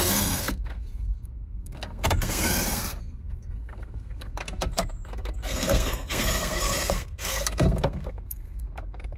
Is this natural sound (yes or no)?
no